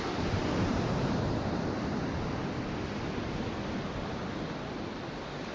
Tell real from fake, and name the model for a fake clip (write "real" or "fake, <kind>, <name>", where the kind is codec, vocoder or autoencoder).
real